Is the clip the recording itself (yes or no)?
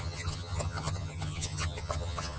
no